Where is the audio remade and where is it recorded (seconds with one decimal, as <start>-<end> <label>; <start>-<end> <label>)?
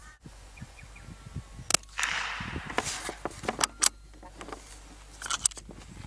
0.0-0.8 remade; 0.8-6.1 recorded